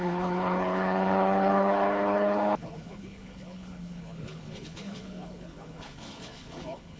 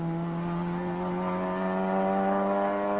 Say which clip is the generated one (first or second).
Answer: first